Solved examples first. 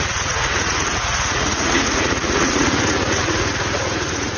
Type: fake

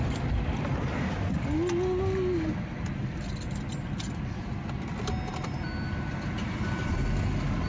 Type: real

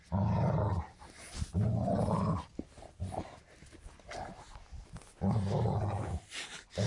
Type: real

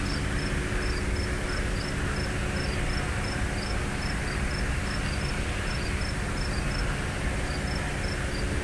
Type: real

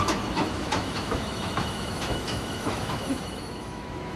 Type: fake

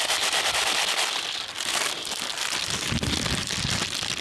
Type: real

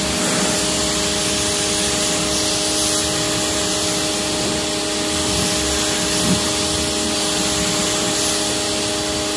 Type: real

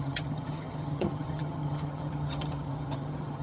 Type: fake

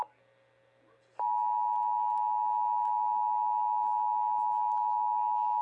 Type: real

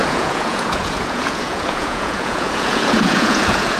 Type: fake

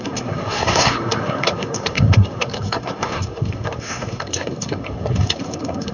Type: fake